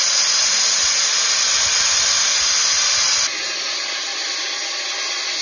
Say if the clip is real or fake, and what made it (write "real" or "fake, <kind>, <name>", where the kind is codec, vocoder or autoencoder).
real